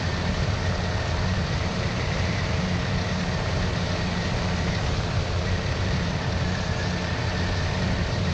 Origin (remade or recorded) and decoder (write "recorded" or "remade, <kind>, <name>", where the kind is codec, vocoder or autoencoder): remade, vocoder, BigVGAN v2